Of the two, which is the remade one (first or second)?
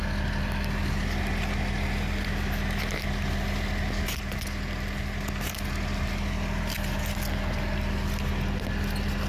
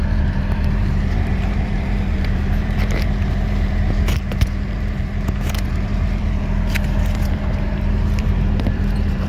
second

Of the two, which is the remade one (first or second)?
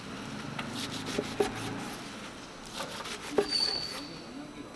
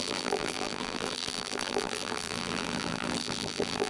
second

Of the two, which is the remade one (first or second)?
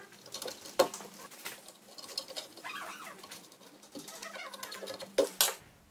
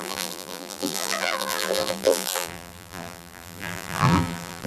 second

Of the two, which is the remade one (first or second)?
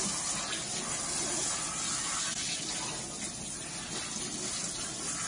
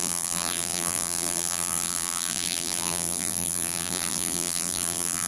second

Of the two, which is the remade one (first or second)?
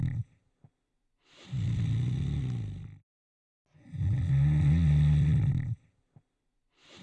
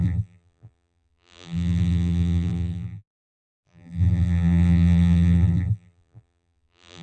second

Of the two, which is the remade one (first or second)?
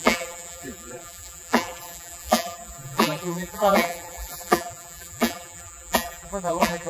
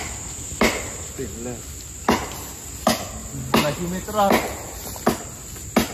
first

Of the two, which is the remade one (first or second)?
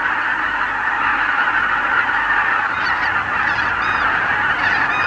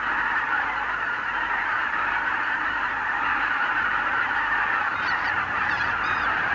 second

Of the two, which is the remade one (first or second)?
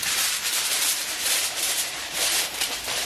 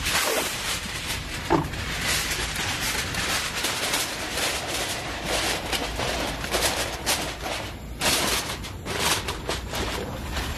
first